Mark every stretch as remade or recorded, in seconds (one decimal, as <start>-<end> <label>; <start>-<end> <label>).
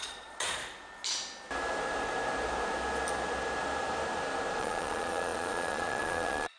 0.0-0.6 remade; 0.6-4.6 recorded; 4.6-6.6 remade